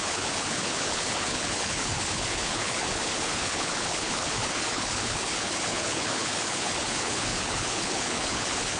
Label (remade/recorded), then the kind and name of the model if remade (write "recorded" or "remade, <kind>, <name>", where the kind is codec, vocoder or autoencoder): remade, codec, HILCodec